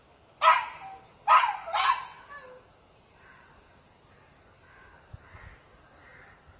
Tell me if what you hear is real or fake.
real